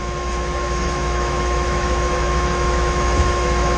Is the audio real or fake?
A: fake